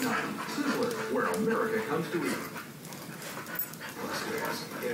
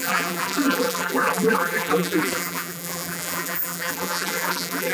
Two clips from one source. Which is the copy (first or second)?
second